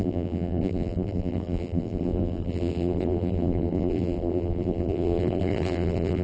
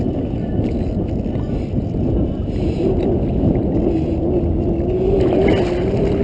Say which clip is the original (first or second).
second